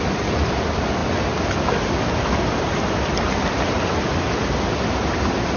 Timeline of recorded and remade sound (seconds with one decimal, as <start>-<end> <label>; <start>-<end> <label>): 0.0-5.6 recorded